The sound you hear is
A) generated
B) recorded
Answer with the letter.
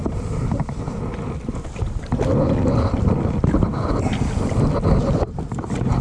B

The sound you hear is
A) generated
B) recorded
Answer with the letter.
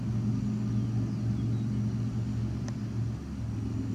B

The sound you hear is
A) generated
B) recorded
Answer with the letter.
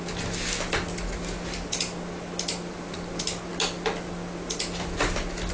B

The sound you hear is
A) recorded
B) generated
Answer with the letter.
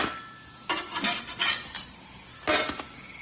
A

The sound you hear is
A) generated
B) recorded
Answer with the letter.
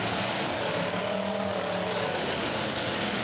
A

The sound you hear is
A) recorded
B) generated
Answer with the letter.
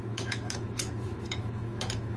B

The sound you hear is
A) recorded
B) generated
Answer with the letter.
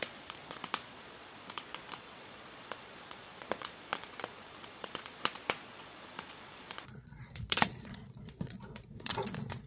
B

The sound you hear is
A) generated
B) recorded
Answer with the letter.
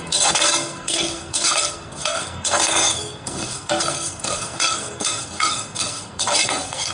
A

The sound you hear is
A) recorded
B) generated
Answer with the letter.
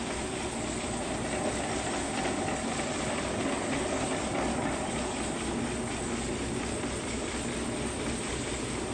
A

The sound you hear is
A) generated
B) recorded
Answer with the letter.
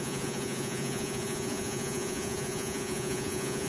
A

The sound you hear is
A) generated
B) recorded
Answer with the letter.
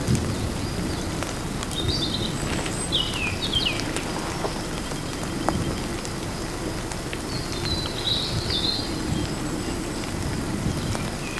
B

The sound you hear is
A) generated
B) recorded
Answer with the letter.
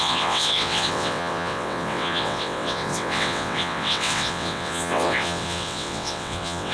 A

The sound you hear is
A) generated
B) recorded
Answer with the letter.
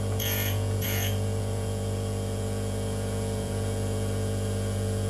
A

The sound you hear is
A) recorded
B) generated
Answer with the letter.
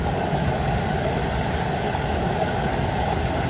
B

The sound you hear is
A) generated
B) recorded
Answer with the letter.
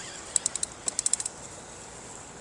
B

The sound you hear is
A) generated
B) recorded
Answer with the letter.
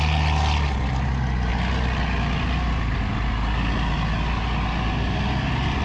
B